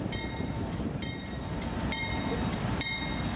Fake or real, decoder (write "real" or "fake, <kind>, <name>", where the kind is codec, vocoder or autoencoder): real